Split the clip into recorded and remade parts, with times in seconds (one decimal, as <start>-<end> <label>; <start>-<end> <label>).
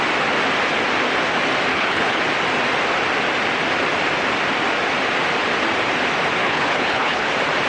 0.0-1.7 recorded; 1.7-2.2 remade; 2.2-6.4 recorded; 6.4-7.3 remade; 7.3-7.7 recorded